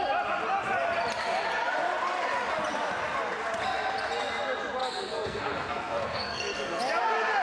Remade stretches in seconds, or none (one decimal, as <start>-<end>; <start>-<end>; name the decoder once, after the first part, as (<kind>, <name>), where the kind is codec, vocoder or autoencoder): 4.8-6.8 (codec, SNAC)